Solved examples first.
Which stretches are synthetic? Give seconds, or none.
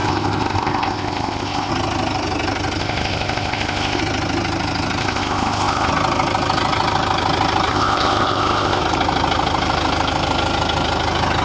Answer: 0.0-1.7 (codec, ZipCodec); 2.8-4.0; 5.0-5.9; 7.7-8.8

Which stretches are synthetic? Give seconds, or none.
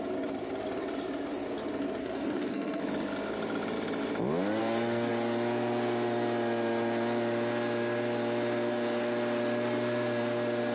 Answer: 2.0-2.8 (codec, SNAC); 4.6-5.1